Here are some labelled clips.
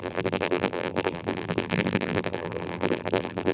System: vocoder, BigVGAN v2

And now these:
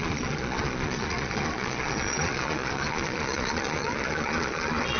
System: vocoder, Vocos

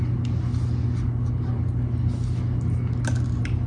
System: none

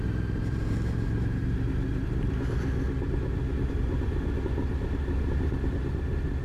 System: none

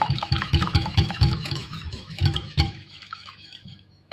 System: autoencoder, DAC-VAE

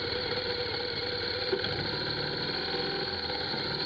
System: none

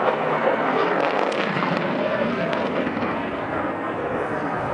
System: codec, SNAC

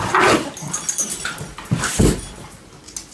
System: none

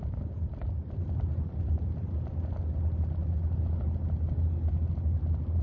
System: none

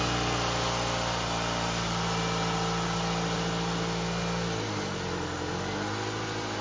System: none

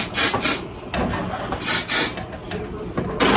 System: none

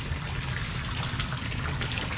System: none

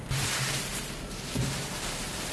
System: vocoder, BigVGAN v2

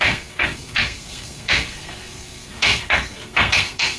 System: codec, SNAC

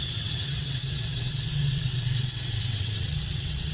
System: vocoder, WaveNeXt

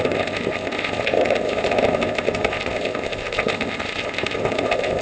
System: codec, ZipCodec